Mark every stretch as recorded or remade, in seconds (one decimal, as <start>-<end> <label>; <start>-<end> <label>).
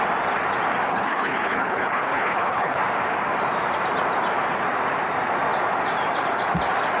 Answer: 0.0-0.9 recorded; 0.9-2.8 remade; 2.8-7.0 recorded